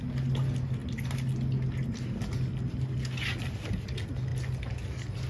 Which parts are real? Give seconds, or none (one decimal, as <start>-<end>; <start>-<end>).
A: 0.0-5.3